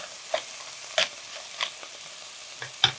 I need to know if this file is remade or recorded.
recorded